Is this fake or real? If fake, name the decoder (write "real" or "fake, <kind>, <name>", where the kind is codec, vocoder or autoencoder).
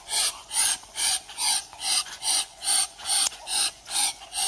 fake, vocoder, Vocos